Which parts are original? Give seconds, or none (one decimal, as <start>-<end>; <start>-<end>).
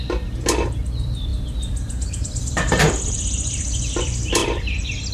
none